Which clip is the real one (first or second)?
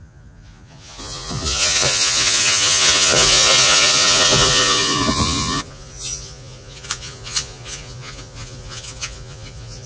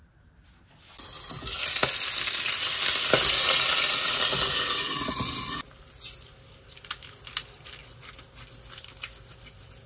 second